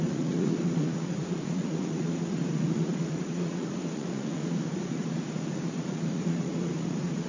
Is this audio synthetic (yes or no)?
yes